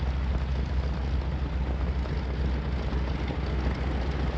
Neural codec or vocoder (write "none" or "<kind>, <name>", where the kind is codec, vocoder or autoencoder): none